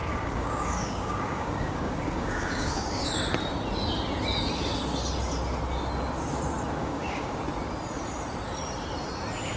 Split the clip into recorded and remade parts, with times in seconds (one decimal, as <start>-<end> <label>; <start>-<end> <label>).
0.0-3.1 remade; 3.1-6.8 recorded; 6.8-7.4 remade; 7.4-9.6 recorded